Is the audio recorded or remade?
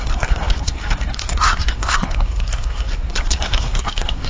remade